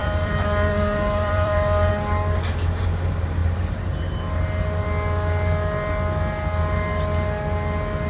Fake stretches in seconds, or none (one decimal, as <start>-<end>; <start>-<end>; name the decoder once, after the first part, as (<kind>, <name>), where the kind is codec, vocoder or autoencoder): 0.0-1.9 (vocoder, BigVGAN v2); 3.4-4.2